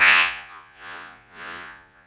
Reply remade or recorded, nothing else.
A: remade